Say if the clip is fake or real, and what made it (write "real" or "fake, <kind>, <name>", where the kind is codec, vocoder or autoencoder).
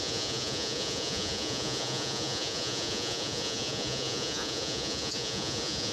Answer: fake, vocoder, Vocos